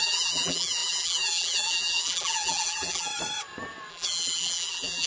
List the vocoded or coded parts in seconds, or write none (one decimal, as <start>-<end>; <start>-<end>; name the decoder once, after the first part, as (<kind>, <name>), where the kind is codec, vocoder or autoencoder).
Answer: 0.0-3.1 (vocoder, BigVGAN v2); 3.9-5.1